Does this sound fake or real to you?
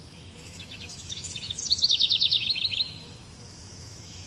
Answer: fake